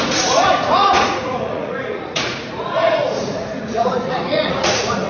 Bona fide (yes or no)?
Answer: no